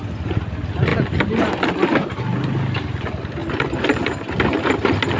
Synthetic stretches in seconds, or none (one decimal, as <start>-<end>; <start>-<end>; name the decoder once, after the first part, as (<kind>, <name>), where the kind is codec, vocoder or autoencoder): none

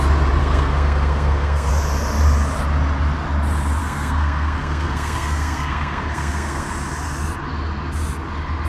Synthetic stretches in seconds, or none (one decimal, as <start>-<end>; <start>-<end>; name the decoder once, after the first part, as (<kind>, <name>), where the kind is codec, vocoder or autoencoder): 0.4-1.7 (codec, SNAC); 3.8-6.7

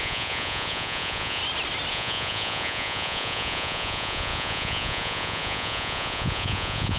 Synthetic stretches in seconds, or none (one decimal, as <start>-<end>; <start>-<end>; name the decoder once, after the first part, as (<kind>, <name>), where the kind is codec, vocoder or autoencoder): 0.0-1.4 (vocoder, Vocos); 1.9-7.0

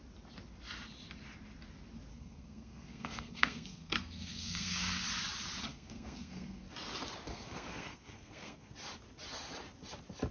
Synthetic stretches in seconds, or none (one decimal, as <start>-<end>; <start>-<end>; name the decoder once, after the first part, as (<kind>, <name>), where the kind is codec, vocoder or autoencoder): 2.1-5.0 (codec, SNAC); 5.7-6.7; 7.3-8.7

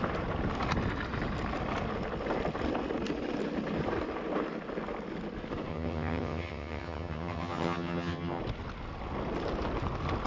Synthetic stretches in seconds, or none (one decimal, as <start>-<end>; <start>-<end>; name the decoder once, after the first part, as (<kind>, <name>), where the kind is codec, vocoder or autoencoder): 5.7-8.4 (vocoder, HiFi-GAN)